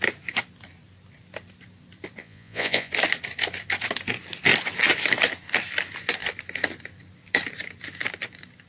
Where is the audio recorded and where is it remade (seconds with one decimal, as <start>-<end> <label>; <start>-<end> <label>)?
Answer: 0.0-2.2 recorded; 2.2-2.9 remade; 2.9-8.7 recorded